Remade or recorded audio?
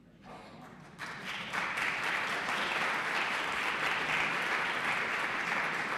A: recorded